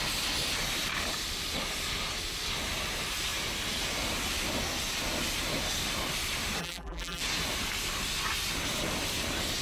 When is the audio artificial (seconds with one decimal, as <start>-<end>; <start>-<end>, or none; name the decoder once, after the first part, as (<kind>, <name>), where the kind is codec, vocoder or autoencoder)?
6.6-7.2 (vocoder, BigVGAN v2)

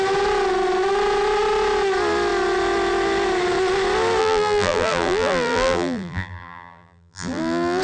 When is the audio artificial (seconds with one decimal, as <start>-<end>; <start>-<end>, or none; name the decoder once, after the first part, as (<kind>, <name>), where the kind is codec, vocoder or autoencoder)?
4.2-7.8 (vocoder, BigVGAN v2)

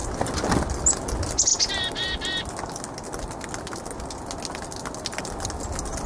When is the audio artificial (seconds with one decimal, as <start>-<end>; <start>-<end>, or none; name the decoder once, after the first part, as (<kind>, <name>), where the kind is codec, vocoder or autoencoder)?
none

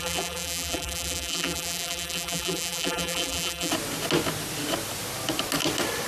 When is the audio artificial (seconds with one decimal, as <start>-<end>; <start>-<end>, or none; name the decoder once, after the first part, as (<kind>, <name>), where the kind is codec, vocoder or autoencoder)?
0.0-3.7 (vocoder, BigVGAN v2)

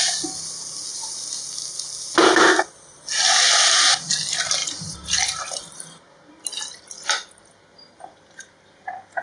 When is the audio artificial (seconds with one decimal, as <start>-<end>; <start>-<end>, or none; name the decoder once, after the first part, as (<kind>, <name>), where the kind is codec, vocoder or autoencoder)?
4.6-6.3 (vocoder, BigVGAN v2)

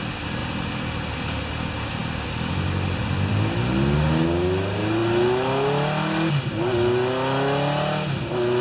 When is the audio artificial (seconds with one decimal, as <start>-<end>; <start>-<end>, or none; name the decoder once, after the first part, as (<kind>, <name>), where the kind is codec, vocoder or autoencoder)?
none

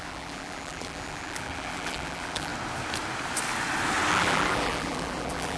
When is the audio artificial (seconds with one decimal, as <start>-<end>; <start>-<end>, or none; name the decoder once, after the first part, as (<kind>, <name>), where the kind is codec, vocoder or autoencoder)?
0.0-2.5 (vocoder, BigVGAN v2); 4.1-5.6

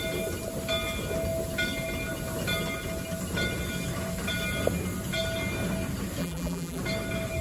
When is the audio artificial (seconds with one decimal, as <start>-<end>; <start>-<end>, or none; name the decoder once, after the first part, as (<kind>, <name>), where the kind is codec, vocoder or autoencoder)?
6.2-6.8 (vocoder, BigVGAN v2)